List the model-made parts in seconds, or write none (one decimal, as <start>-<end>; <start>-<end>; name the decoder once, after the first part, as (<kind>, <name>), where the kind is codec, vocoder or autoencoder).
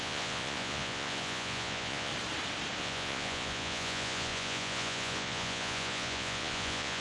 0.0-2.1 (vocoder, Vocos); 2.8-7.0